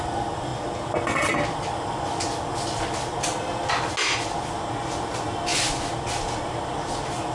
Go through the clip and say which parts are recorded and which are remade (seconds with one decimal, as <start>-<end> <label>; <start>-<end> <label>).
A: 0.0-7.3 recorded